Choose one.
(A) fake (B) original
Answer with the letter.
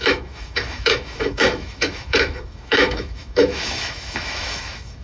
A